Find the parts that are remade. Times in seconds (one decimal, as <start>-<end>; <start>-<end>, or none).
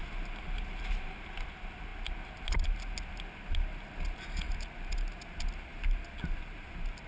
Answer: none